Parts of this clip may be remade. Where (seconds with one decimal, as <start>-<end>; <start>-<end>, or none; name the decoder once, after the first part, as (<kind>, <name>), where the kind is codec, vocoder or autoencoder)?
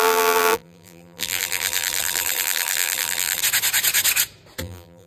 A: 0.0-3.4 (vocoder, BigVGAN v2); 4.6-5.1